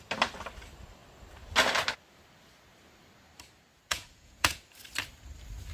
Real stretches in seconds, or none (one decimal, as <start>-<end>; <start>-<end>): 0.0-3.9; 4.6-5.7